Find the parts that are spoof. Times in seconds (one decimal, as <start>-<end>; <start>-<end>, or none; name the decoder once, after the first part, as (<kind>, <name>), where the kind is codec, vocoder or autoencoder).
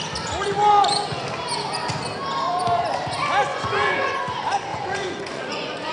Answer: 3.5-4.2 (vocoder, Vocos); 4.7-5.9